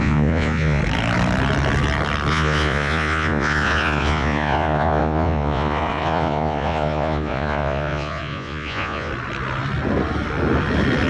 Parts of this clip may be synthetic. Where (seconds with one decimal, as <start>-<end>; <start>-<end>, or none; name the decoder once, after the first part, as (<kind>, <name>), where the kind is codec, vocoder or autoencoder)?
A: 0.0-0.8 (vocoder, Vocos); 2.3-9.1